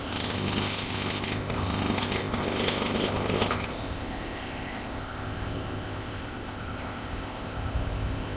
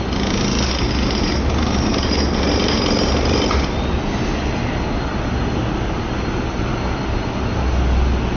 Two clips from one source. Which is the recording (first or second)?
second